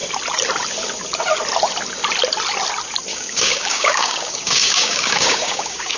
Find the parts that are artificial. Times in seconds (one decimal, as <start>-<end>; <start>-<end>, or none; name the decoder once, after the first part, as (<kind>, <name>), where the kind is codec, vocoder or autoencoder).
3.1-6.0 (codec, DAC)